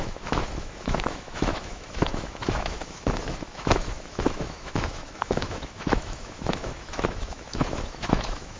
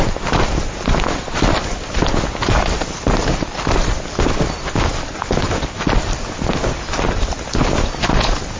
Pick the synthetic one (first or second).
first